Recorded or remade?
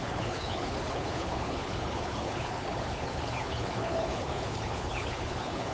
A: remade